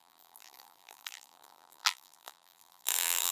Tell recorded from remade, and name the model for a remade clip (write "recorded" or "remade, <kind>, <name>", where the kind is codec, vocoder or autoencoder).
remade, vocoder, BigVGAN v2